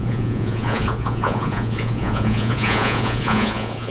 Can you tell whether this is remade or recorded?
remade